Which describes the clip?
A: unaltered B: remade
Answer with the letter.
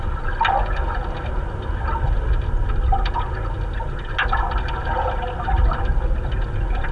A